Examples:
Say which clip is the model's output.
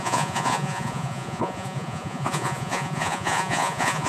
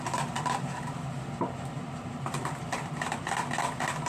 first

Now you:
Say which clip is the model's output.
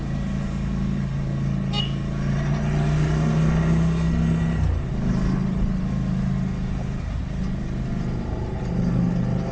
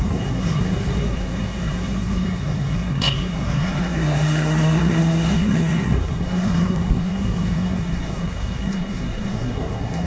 second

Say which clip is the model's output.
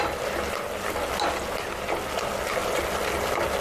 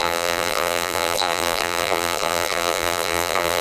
second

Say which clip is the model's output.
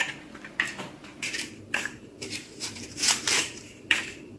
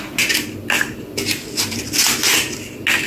first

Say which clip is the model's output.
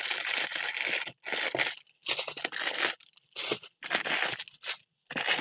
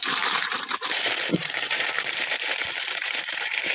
second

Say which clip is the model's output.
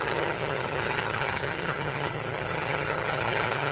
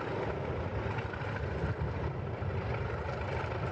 first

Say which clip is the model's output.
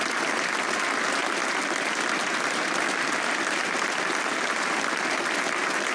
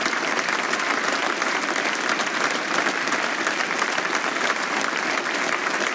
second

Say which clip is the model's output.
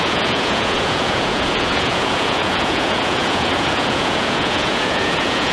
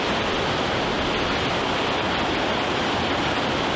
first